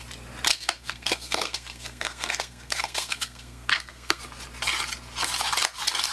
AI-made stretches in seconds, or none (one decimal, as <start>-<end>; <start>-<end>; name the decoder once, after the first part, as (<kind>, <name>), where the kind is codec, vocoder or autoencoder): 0.5-4.2 (codec, SNAC)